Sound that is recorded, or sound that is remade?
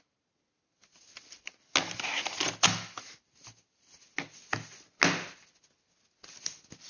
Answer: recorded